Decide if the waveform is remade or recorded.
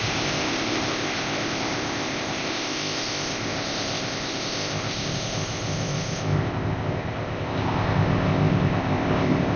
remade